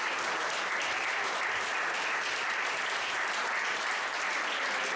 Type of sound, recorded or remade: recorded